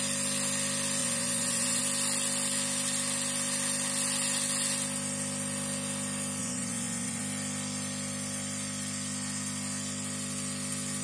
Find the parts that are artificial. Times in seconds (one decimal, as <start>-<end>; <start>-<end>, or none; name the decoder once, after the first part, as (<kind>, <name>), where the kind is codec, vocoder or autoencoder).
1.0-1.8 (vocoder, Vocos); 6.4-7.2